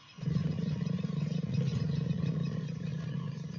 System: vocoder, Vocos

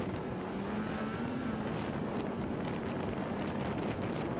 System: none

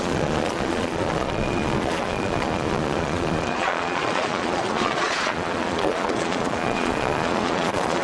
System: vocoder, Vocos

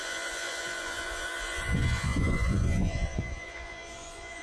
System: vocoder, Vocos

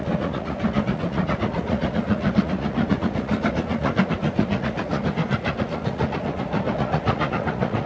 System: vocoder, Vocos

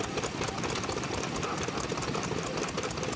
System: none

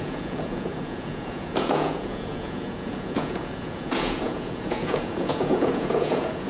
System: vocoder, Vocos